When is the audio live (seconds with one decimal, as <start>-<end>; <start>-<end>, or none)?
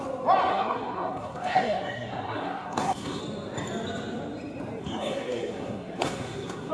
0.0-0.5; 3.2-4.8